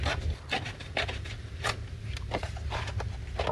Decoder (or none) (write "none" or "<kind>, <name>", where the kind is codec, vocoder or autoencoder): none